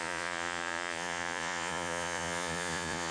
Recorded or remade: remade